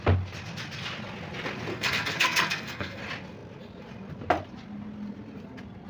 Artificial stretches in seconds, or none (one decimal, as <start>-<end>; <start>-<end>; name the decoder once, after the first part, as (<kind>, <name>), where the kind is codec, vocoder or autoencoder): 1.7-3.0 (codec, SNAC)